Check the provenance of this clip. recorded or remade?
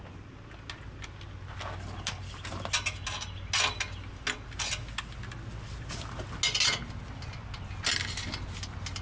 recorded